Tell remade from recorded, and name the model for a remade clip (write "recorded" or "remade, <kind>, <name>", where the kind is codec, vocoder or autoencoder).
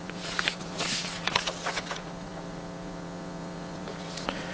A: remade, vocoder, Vocos